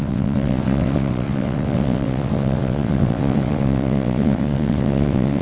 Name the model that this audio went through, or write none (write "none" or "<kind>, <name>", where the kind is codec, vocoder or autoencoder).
vocoder, WaveNeXt